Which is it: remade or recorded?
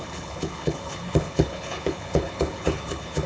remade